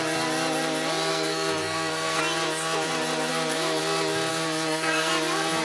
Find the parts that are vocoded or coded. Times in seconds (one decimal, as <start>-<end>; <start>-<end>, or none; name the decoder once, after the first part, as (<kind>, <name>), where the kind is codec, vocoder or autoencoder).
1.1-2.2 (codec, SNAC); 3.3-3.8; 4.3-5.1